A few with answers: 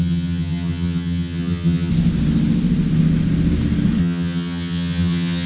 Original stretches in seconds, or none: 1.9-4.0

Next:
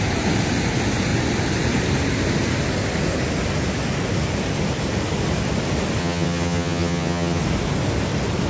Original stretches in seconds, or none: 0.0-6.0; 7.4-8.5

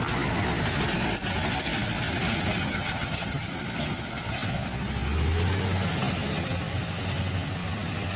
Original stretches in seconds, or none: 0.0-2.6; 3.5-8.2